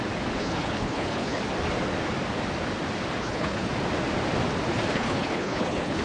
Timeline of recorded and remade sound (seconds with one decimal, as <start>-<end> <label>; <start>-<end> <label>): 0.0-0.4 recorded; 0.4-1.4 remade; 1.4-3.2 recorded; 3.2-3.7 remade; 3.7-4.9 recorded; 4.9-6.0 remade

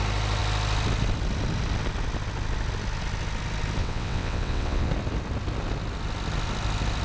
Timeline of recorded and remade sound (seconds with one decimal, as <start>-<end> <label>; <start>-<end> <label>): 0.0-3.8 recorded; 3.8-4.9 remade; 4.9-7.0 recorded